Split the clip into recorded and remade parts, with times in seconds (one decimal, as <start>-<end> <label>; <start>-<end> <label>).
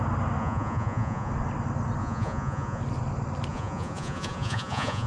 0.0-0.4 recorded; 0.4-1.3 remade; 1.3-2.0 recorded; 2.0-2.8 remade; 2.8-3.5 recorded; 3.5-5.1 remade